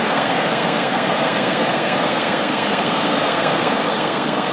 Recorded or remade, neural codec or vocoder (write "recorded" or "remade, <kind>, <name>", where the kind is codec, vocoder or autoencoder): remade, codec, SNAC